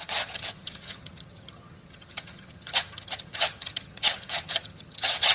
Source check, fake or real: fake